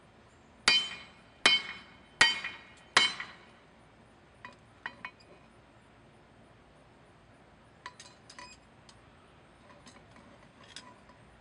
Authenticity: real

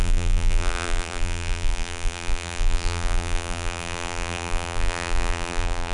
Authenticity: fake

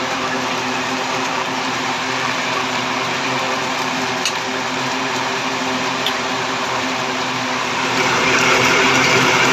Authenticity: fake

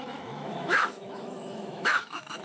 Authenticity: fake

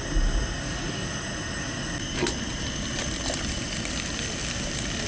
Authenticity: real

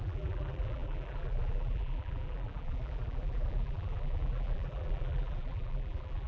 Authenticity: fake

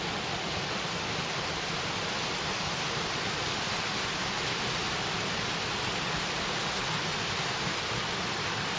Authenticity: real